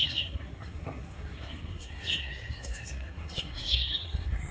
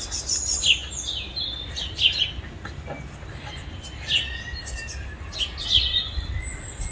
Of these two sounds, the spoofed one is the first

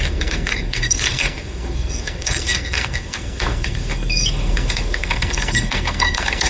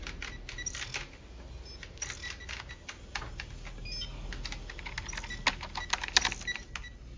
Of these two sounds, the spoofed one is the first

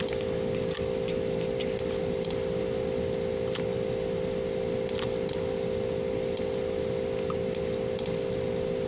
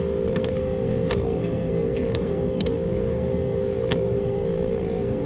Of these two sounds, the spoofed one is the second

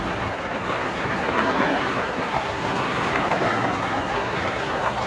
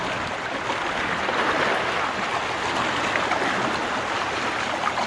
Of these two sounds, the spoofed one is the first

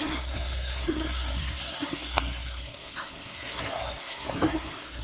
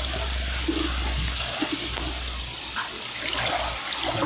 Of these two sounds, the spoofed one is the first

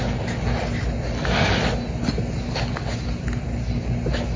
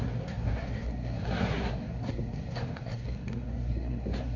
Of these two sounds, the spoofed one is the second